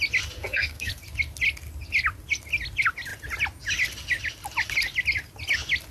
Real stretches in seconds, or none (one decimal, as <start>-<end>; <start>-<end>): 0.0-0.4; 0.9-5.9